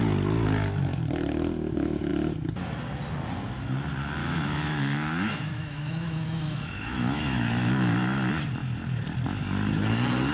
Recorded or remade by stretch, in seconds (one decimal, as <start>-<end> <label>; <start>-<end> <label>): 0.0-4.2 recorded; 4.2-8.3 remade; 8.3-10.3 recorded

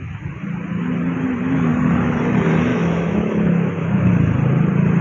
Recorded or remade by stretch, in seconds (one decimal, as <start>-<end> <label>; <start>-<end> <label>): 0.0-2.7 recorded; 2.7-4.1 remade; 4.1-5.0 recorded

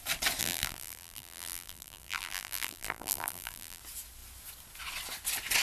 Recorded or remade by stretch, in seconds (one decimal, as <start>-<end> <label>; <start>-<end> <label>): 0.0-0.4 recorded; 0.4-3.8 remade; 3.8-5.6 recorded

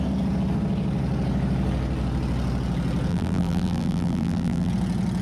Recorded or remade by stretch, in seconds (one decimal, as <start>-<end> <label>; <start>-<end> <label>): 0.0-3.1 recorded; 3.1-4.7 remade; 4.7-5.2 recorded

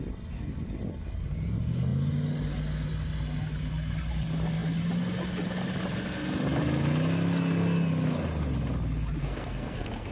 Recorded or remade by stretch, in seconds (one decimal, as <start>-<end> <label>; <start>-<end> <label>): 0.0-9.2 recorded; 9.2-10.1 remade

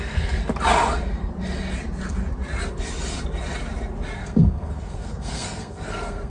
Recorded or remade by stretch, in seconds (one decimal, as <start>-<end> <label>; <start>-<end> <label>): 0.0-0.4 remade; 0.4-4.2 recorded; 4.2-6.3 remade

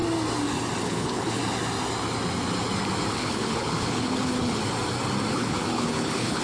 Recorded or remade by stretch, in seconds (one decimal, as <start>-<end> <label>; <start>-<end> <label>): 0.0-0.8 recorded; 0.8-1.4 remade; 1.4-3.1 recorded; 3.1-4.6 remade; 4.6-5.3 recorded; 5.3-6.4 remade